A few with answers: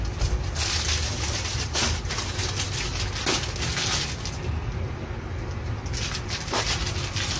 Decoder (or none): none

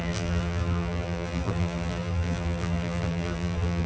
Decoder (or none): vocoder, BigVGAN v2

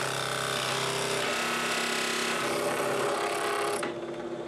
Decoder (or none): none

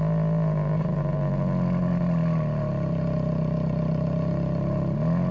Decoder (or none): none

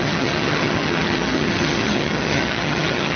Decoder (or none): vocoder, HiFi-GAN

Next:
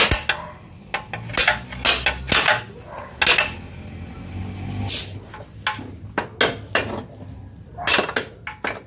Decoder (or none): none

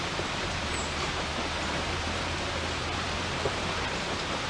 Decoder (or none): vocoder, BigVGAN v2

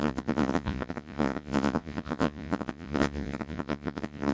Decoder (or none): vocoder, Vocos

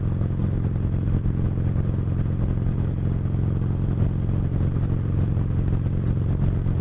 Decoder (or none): none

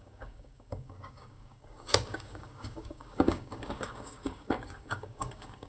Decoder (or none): codec, DAC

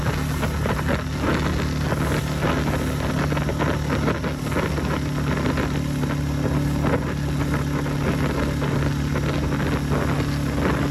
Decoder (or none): none